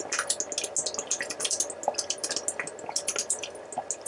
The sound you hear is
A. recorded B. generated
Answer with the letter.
A